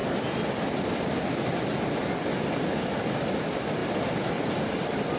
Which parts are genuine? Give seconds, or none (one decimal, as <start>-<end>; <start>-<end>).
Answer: 0.0-5.2